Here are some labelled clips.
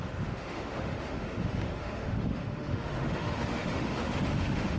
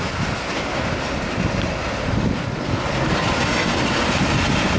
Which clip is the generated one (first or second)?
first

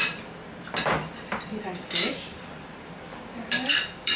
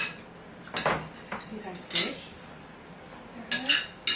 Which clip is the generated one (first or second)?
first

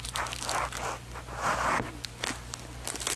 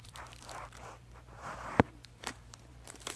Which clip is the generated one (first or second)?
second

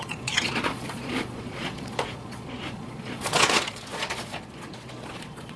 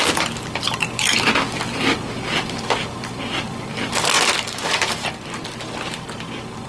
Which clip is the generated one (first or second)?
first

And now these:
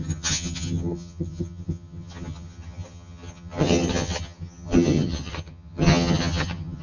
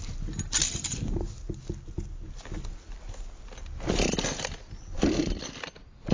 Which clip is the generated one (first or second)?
first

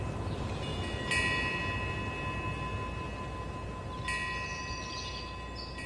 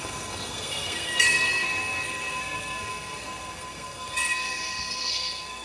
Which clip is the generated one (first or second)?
second